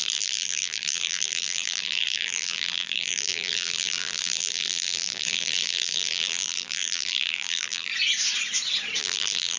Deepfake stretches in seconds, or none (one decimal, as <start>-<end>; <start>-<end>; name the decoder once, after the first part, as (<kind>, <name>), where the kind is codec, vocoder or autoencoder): 0.0-7.9 (vocoder, BigVGAN v2); 9.0-9.6